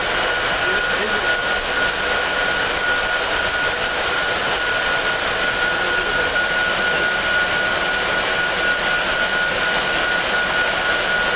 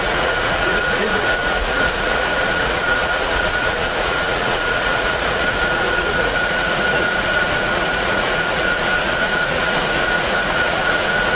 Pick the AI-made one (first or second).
second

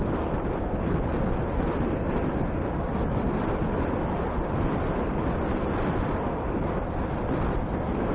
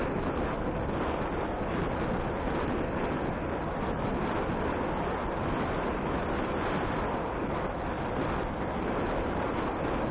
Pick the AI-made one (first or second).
first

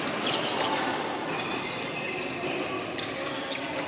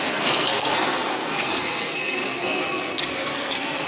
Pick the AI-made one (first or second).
second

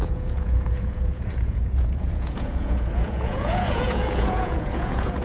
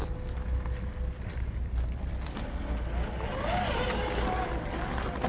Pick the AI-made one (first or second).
first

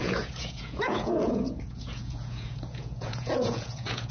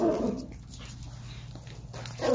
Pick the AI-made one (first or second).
first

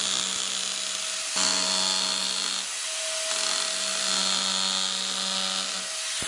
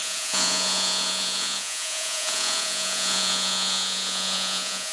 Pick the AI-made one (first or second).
second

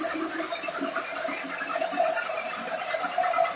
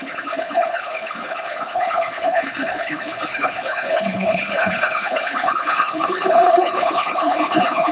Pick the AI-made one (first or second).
second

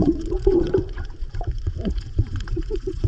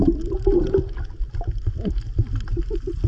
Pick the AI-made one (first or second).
first